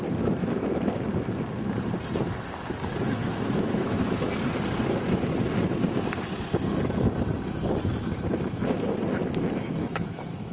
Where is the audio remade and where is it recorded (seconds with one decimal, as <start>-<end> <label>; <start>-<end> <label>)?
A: 0.0-3.2 recorded; 3.2-4.3 remade; 4.3-9.8 recorded; 9.8-10.5 remade